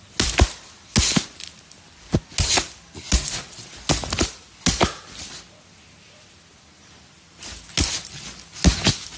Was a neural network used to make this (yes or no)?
no